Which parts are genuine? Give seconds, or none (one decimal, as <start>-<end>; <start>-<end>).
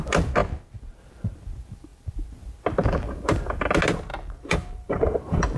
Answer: 0.0-4.1